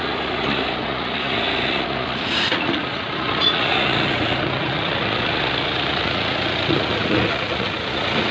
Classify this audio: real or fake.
fake